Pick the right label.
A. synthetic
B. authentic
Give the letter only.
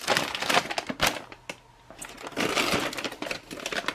B